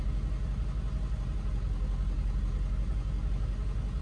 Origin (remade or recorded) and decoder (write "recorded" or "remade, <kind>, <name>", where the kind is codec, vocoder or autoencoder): recorded